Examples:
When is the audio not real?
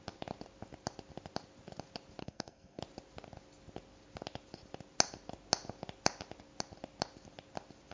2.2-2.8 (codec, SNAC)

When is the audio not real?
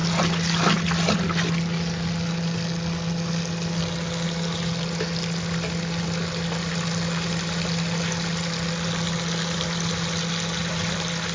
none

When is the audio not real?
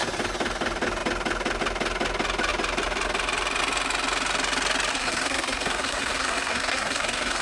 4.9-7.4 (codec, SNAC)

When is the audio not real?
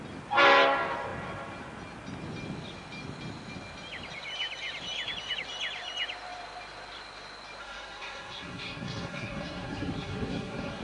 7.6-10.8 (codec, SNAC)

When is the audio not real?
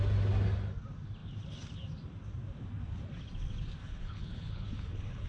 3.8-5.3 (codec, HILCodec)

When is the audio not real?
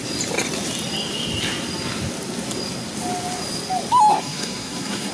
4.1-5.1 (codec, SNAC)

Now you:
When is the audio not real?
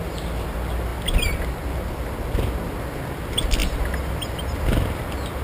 none